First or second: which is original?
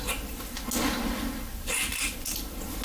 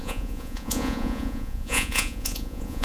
first